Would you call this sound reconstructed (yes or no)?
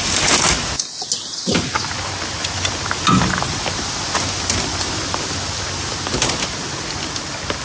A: no